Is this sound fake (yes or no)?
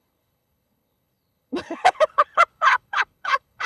yes